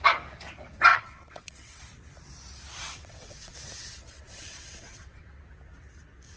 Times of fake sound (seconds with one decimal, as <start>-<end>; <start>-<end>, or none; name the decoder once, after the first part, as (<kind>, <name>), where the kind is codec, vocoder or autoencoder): 0.9-1.8 (vocoder, WaveNeXt); 2.8-5.4